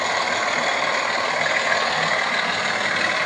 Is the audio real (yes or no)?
yes